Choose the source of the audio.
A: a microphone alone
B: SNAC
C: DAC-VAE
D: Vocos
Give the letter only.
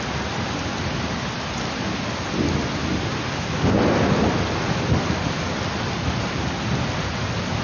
A